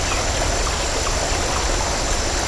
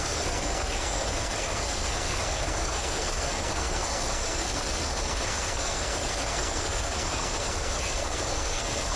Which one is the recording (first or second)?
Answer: first